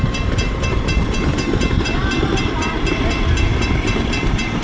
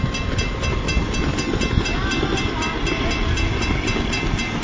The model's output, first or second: first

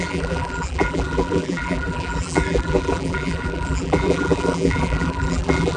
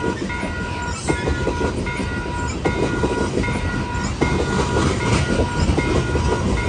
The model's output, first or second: first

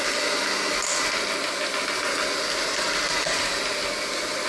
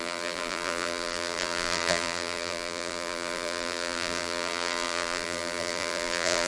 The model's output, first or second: second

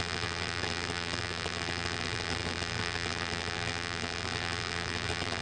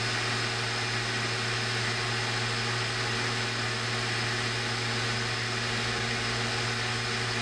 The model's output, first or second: first